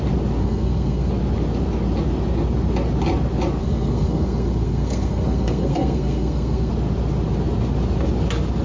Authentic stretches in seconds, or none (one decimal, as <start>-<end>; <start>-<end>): 0.0-0.4; 1.1-3.6; 6.7-8.6